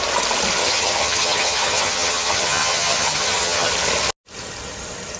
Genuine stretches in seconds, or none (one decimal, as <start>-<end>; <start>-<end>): 0.0-0.6; 3.7-5.2